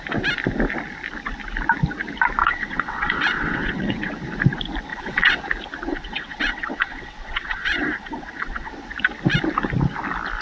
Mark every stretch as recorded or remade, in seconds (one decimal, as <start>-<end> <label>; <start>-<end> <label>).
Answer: 0.0-2.4 recorded; 2.4-4.1 remade; 4.1-4.9 recorded; 4.9-5.4 remade; 5.4-5.9 recorded; 5.9-8.7 remade; 8.7-10.4 recorded